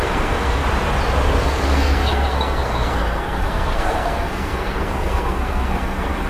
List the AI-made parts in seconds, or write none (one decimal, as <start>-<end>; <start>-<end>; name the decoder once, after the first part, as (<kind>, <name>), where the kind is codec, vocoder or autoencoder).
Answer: 0.0-0.6 (codec, SNAC); 1.4-6.3